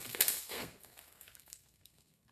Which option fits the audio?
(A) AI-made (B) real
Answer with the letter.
A